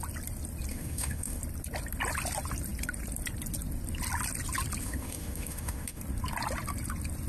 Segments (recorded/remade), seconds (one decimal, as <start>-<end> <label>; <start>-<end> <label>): 0.0-0.7 recorded; 0.7-1.4 remade; 1.4-4.8 recorded; 4.8-6.0 remade; 6.0-7.3 recorded